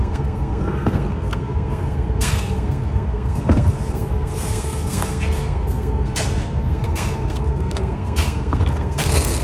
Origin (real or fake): fake